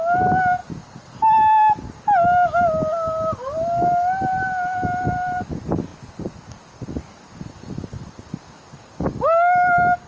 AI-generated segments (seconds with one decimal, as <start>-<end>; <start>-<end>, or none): none